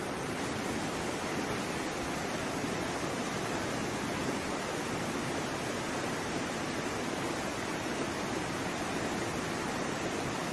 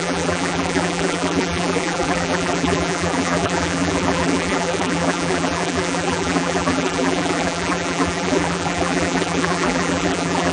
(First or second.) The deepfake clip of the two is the second